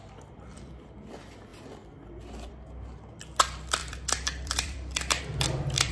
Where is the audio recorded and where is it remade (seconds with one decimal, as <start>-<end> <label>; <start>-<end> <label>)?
0.0-3.8 recorded; 3.8-5.2 remade; 5.2-5.9 recorded